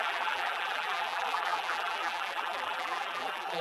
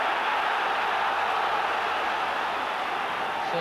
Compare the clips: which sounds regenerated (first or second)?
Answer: first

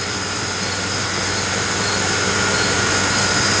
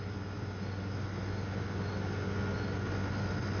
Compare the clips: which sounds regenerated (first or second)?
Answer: first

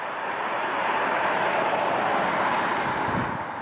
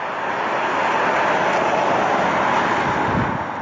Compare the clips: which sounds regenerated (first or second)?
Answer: first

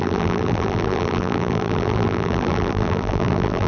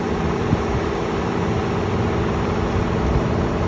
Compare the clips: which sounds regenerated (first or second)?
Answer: first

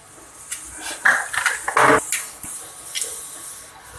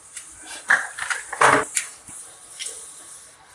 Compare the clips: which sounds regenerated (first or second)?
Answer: second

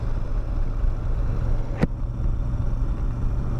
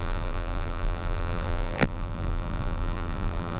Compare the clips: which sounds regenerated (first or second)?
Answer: second